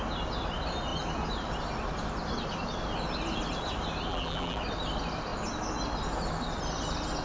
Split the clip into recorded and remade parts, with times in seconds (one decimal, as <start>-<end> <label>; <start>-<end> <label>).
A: 0.0-4.1 recorded; 4.1-4.6 remade; 4.6-7.2 recorded